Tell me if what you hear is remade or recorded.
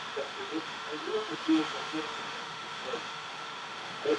remade